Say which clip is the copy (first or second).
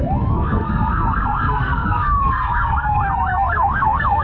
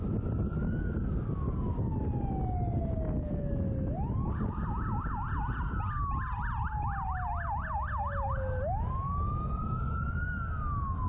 first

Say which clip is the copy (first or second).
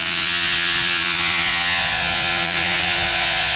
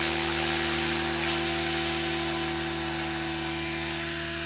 first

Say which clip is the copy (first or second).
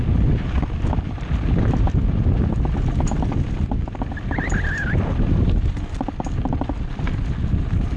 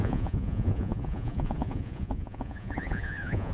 second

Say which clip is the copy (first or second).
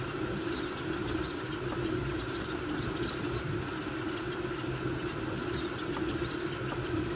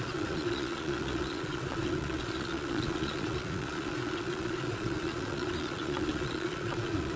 second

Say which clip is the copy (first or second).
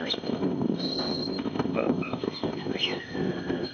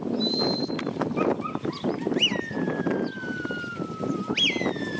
first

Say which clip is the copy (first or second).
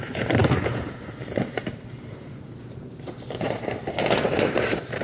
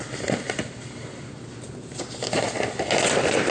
first